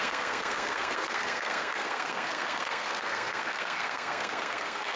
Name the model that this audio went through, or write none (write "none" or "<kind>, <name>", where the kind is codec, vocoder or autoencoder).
codec, SNAC